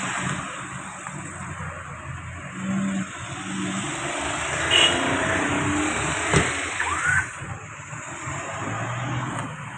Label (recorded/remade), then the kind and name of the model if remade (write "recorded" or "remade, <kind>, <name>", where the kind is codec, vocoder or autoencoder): recorded